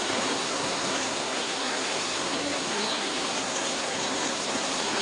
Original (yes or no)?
no